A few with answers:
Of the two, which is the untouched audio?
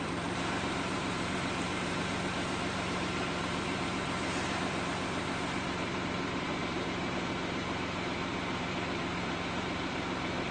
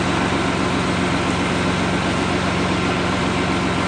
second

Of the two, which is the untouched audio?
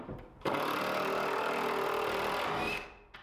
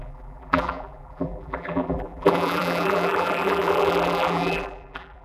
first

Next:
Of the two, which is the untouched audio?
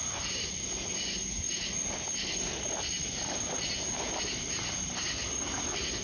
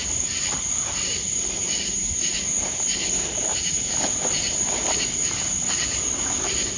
first